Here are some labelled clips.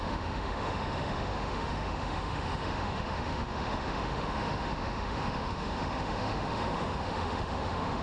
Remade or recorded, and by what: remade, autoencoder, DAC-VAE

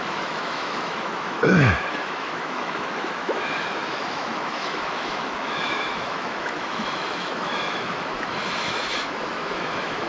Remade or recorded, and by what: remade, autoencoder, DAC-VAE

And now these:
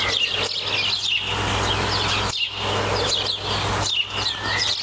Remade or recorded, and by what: recorded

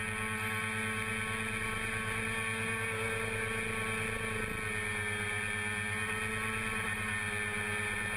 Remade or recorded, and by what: recorded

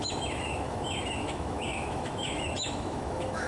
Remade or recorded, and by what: remade, autoencoder, DAC-VAE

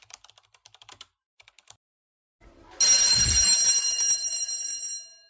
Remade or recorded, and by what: recorded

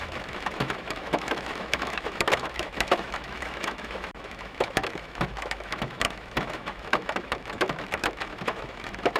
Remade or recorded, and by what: remade, autoencoder, DAC-VAE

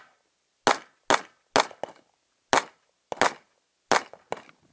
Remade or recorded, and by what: recorded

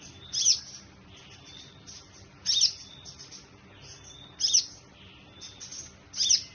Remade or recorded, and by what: recorded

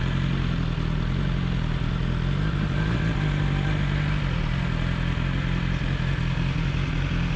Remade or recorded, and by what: recorded